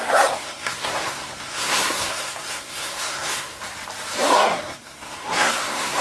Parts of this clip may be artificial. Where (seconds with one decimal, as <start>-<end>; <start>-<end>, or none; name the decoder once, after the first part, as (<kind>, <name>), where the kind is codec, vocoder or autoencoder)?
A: 0.0-3.6 (codec, SNAC); 4.3-6.0